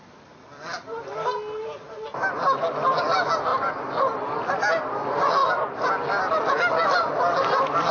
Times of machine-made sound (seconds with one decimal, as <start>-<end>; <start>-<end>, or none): none